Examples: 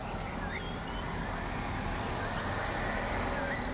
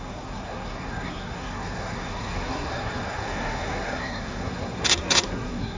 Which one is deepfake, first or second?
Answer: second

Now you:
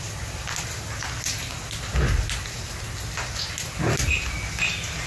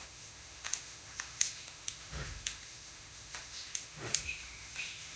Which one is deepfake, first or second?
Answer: second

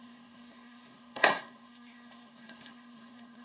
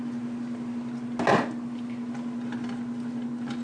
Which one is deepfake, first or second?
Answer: first